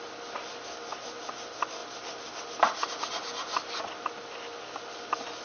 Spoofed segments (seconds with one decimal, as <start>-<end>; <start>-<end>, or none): none